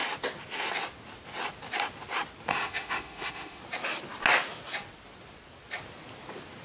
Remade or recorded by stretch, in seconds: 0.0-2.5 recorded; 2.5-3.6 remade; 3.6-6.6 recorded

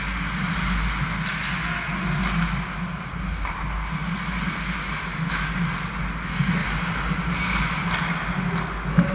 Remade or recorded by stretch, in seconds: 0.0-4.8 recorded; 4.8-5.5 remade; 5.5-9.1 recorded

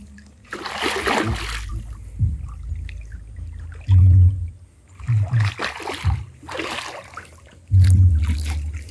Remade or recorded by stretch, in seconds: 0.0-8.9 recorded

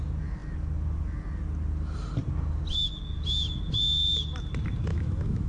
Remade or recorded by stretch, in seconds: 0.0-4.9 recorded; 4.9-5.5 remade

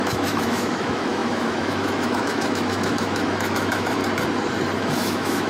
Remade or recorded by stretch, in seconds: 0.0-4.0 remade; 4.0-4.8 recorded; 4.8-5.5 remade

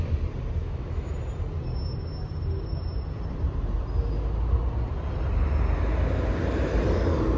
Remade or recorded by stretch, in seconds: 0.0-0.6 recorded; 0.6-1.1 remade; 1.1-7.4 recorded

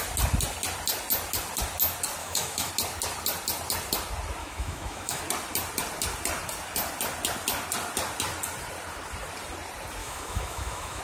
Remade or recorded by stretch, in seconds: 0.0-2.2 recorded; 2.2-2.7 remade; 2.7-4.4 recorded; 4.4-5.2 remade; 5.2-10.0 recorded; 10.0-11.0 remade